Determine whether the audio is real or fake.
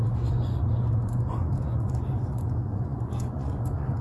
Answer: fake